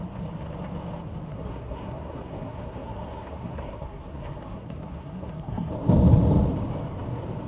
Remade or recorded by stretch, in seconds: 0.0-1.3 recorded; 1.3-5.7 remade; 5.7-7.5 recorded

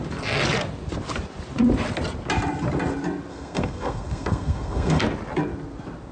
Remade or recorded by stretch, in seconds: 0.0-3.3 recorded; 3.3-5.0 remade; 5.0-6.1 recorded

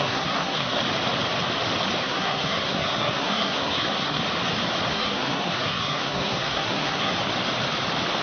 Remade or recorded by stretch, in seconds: 0.0-0.8 remade; 0.8-2.0 recorded; 2.0-4.2 remade; 4.2-4.9 recorded; 4.9-7.1 remade; 7.1-8.2 recorded

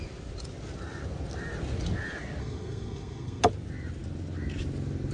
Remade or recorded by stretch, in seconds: 0.0-2.4 recorded; 2.4-3.4 remade; 3.4-5.1 recorded

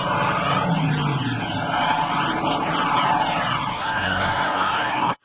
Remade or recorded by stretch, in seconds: 0.0-3.7 recorded; 3.7-5.2 remade

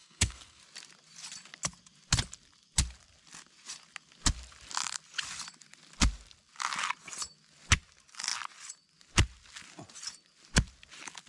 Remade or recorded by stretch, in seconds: 0.0-0.6 remade; 0.6-11.3 recorded